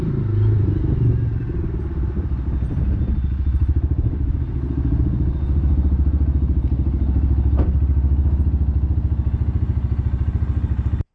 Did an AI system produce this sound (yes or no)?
no